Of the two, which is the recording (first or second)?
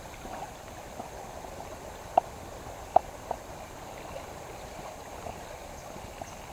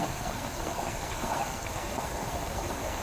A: first